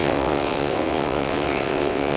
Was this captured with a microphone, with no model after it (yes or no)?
no